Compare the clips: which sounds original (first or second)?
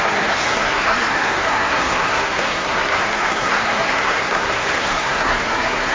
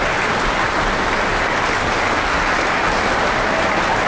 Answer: second